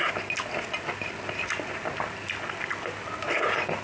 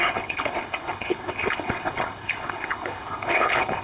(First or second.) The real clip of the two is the first